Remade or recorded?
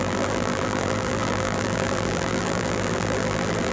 remade